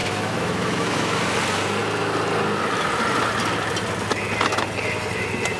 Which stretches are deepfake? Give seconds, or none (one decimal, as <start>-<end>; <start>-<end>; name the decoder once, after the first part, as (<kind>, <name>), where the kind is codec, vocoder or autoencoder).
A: 0.0-1.2 (autoencoder, DAC-VAE)